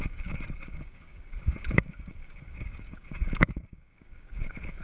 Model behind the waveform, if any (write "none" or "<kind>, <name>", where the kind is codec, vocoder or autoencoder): codec, DAC